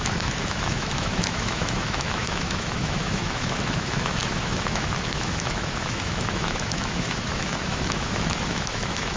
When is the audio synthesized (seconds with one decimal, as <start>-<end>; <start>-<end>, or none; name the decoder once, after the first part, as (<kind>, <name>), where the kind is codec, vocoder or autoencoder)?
0.0-9.2 (autoencoder, DAC-VAE)